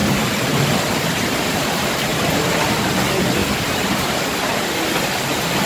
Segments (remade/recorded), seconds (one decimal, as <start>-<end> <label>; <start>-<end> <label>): 0.0-1.5 remade; 1.5-2.1 recorded; 2.1-2.9 remade; 2.9-3.4 recorded; 3.4-4.6 remade; 4.6-5.7 recorded